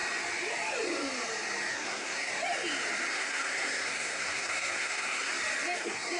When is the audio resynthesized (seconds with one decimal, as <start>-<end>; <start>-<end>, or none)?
1.7-2.3; 3.1-5.3; 5.8-6.2